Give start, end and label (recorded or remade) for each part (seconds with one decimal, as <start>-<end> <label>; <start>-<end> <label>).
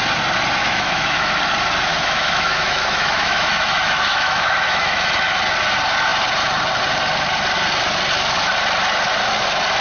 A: 0.0-0.6 recorded; 0.6-1.4 remade; 1.4-1.9 recorded; 1.9-5.1 remade; 5.1-9.8 recorded